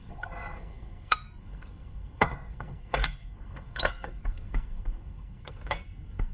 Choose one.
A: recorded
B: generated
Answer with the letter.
B